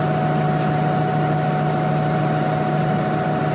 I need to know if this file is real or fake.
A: real